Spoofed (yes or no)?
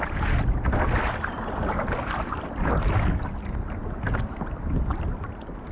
no